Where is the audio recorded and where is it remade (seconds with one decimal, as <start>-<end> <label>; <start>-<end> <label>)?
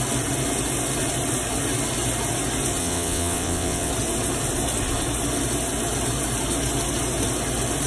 0.0-2.8 recorded; 2.8-3.9 remade; 3.9-7.9 recorded